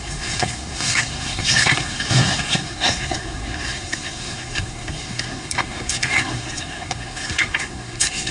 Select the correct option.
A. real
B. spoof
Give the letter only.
B